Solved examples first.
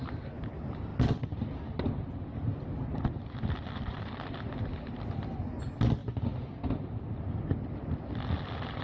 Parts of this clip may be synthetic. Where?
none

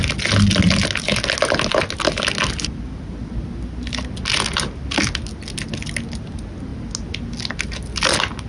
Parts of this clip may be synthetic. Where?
none

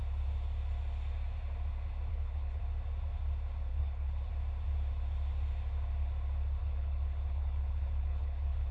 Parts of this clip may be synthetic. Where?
2.1-2.6 (codec, HILCodec); 3.7-4.3; 6.6-8.7

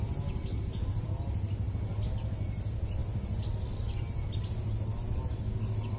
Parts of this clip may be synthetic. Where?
none

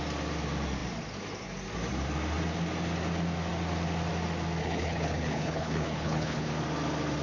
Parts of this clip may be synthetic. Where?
4.6-6.5 (codec, HILCodec)